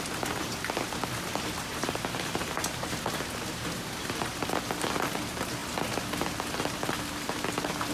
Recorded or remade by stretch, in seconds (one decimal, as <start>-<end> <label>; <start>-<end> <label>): 0.0-1.7 recorded; 1.7-3.0 remade; 3.0-7.9 recorded